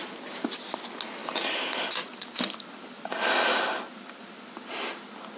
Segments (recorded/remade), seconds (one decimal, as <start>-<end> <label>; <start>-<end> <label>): 0.0-1.2 recorded; 1.2-4.3 remade; 4.3-5.4 recorded